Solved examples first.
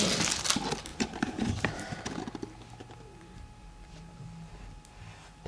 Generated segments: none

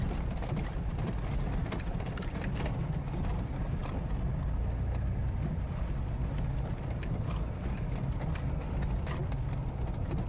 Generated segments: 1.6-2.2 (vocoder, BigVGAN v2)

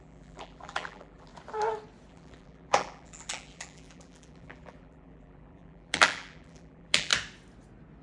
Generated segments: 0.0-1.3 (vocoder, BigVGAN v2); 2.1-7.1

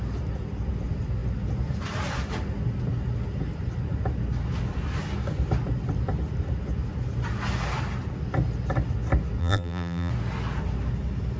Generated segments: 9.4-10.1 (vocoder, BigVGAN v2)